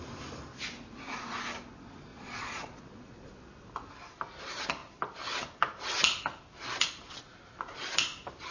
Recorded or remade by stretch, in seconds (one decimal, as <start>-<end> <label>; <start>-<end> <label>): 0.0-2.1 recorded; 2.1-3.3 remade; 3.3-8.5 recorded